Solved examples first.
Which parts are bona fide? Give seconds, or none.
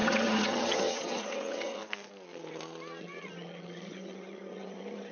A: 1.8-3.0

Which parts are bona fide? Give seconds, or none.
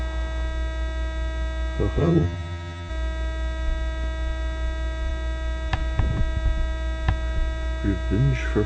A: 0.0-2.0; 2.9-8.7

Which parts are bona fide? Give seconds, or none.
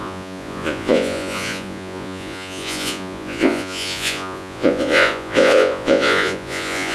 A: none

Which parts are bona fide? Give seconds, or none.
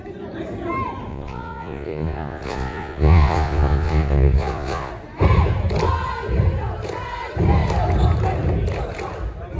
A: 0.0-1.1; 4.9-9.6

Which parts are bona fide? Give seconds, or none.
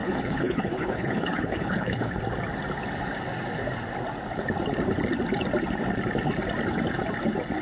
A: 2.2-7.6